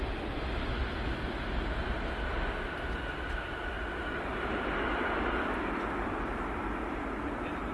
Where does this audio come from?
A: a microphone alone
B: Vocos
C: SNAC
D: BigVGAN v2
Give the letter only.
A